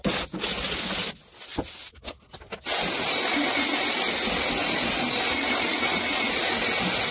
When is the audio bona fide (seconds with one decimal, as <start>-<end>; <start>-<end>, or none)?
0.0-7.1